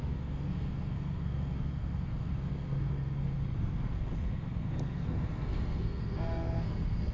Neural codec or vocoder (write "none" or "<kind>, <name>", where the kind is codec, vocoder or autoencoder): codec, SNAC